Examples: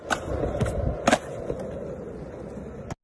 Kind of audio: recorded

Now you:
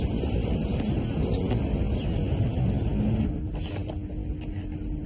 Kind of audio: recorded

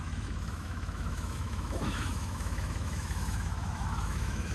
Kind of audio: remade